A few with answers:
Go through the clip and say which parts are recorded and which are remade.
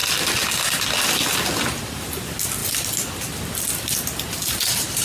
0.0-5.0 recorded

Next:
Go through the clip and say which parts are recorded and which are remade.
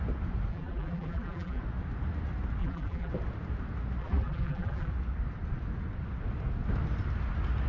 0.0-0.5 recorded; 0.5-1.6 remade; 1.6-2.6 recorded; 2.6-3.1 remade; 3.1-4.0 recorded; 4.0-4.9 remade; 4.9-7.7 recorded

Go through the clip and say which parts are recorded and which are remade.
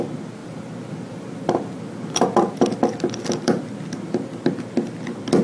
0.0-0.4 recorded; 0.4-3.6 remade; 3.6-5.4 recorded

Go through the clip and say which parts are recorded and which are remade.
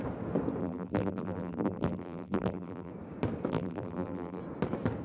0.0-0.6 recorded; 0.6-2.9 remade; 2.9-3.5 recorded; 3.5-4.4 remade; 4.4-5.0 recorded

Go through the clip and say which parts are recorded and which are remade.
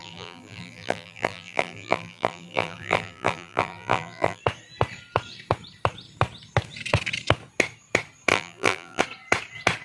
0.0-4.4 remade; 4.4-8.3 recorded; 8.3-9.0 remade; 9.0-9.8 recorded